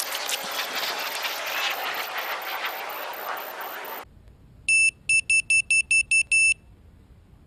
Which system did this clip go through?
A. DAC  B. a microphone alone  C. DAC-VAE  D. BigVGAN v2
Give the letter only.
B